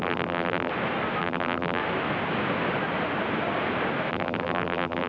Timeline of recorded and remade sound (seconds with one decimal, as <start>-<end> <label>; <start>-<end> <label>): 0.0-0.7 remade; 0.7-1.2 recorded; 1.2-1.8 remade; 1.8-4.1 recorded; 4.1-5.1 remade